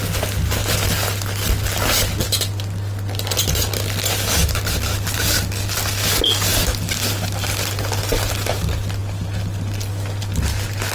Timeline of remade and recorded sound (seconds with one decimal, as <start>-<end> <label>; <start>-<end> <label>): 0.0-10.9 recorded